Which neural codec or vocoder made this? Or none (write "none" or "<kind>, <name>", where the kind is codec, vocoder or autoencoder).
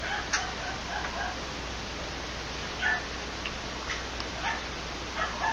none